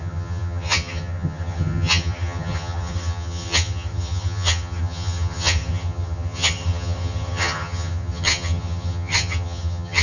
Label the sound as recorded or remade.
remade